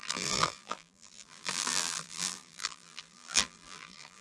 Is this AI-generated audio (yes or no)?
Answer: yes